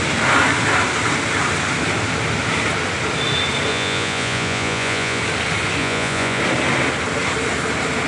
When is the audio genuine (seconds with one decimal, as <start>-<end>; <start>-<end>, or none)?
0.0-3.7; 5.2-5.8; 6.4-8.1